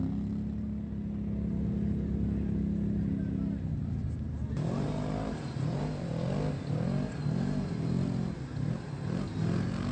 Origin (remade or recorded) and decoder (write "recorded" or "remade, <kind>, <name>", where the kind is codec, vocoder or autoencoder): recorded